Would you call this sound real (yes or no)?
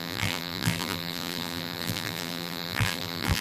no